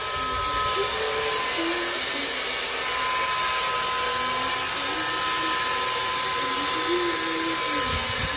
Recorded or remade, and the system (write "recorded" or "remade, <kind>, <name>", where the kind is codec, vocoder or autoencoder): recorded